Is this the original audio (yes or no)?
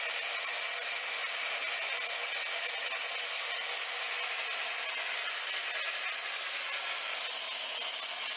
yes